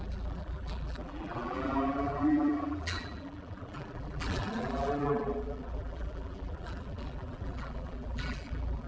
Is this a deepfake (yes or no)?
yes